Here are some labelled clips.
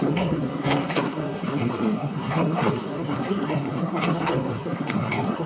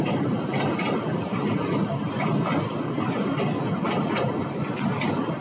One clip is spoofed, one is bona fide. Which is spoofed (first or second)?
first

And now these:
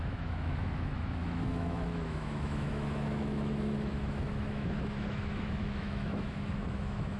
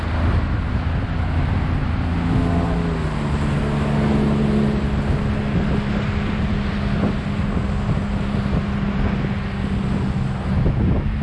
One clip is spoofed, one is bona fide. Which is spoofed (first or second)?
first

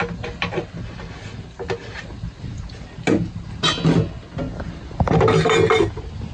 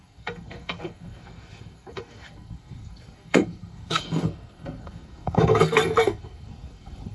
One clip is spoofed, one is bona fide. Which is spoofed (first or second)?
second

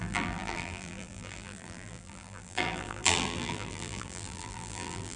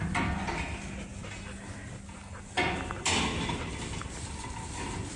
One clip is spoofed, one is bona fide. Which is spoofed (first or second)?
first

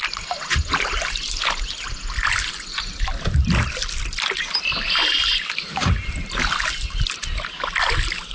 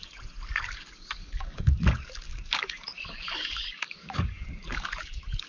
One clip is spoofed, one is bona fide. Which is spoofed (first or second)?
second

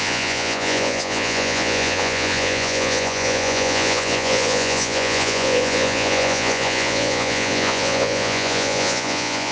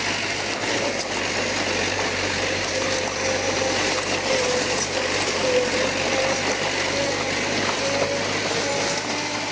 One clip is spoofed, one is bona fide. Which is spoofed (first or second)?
first